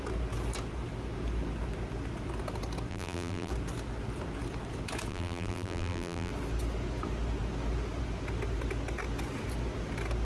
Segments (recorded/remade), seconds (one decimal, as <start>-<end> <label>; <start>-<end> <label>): 0.0-2.9 recorded; 2.9-3.5 remade; 3.5-5.1 recorded; 5.1-6.3 remade; 6.3-10.2 recorded